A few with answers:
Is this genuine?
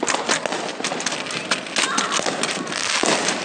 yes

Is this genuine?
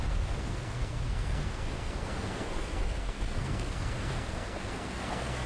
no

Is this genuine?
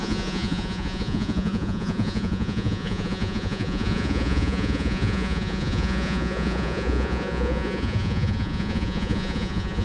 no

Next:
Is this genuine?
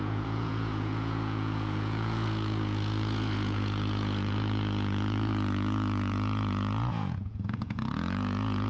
no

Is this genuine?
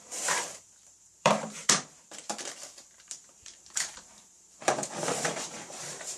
no